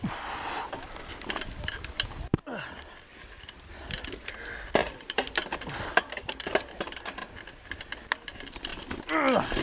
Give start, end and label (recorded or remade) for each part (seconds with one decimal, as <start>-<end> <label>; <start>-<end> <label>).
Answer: 0.0-3.1 recorded; 3.1-3.8 remade; 3.8-4.8 recorded; 4.8-6.8 remade; 6.8-7.2 recorded; 7.2-7.8 remade; 7.8-9.6 recorded